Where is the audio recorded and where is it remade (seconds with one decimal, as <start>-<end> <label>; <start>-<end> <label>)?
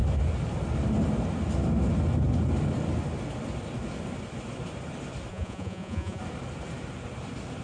0.0-5.3 recorded; 5.3-6.2 remade; 6.2-7.6 recorded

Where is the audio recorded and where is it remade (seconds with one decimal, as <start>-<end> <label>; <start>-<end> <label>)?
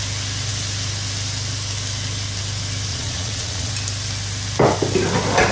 0.0-2.9 recorded; 2.9-3.7 remade; 3.7-5.5 recorded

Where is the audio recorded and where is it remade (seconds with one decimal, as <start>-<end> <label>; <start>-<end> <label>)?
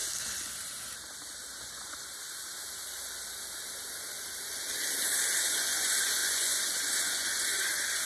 0.0-1.6 recorded; 1.6-2.1 remade; 2.1-5.5 recorded; 5.5-8.0 remade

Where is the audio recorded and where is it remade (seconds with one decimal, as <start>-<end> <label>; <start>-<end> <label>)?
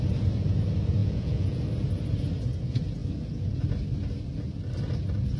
0.0-1.0 recorded; 1.0-1.6 remade; 1.6-5.4 recorded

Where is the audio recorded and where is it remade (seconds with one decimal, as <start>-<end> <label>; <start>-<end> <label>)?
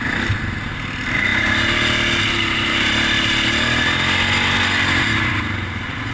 0.0-6.1 recorded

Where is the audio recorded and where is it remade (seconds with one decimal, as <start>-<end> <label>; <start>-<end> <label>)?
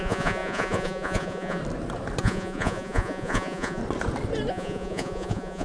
0.0-1.6 remade; 1.6-2.2 recorded; 2.2-3.8 remade; 3.8-4.5 recorded; 4.5-5.6 remade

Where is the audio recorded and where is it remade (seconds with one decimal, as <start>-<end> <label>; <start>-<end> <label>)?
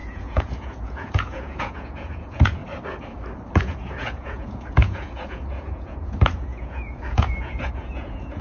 0.0-2.6 remade; 2.6-3.6 recorded; 3.6-8.4 remade